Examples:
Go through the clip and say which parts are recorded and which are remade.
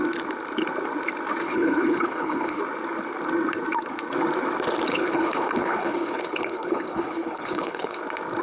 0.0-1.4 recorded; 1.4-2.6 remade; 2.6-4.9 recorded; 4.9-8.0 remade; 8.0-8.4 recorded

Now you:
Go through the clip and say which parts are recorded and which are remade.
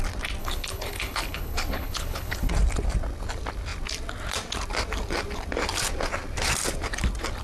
0.0-0.4 recorded; 0.4-2.5 remade; 2.5-7.4 recorded